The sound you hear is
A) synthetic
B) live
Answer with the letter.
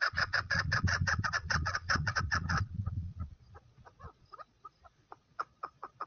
A